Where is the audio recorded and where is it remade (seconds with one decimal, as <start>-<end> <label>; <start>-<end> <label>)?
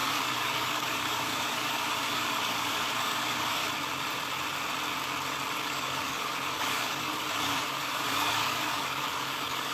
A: 0.0-3.6 remade; 3.6-5.6 recorded; 5.6-9.7 remade